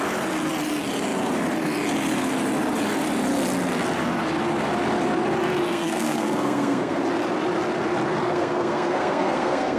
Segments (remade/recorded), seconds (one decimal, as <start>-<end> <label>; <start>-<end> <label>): 0.0-5.7 recorded; 5.7-7.0 remade; 7.0-8.2 recorded; 8.2-9.8 remade